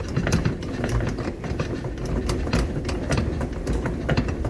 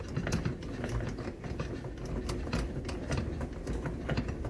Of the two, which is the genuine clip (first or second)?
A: second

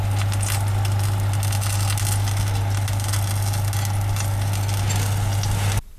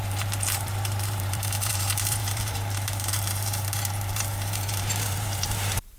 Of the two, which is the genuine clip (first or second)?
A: first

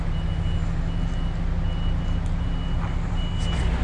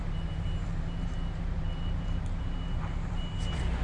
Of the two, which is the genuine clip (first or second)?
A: first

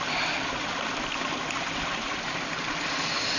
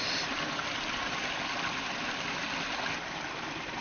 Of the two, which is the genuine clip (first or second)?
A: first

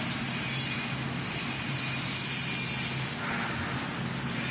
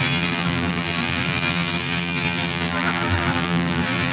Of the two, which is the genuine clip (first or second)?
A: first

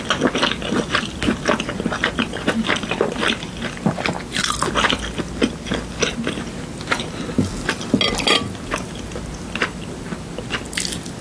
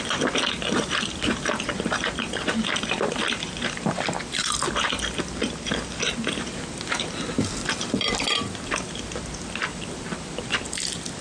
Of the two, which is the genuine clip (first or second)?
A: first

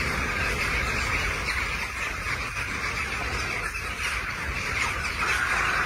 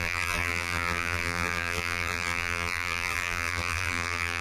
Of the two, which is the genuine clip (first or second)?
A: first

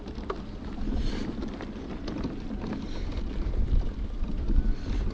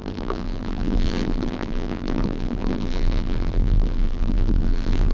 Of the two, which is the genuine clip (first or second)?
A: first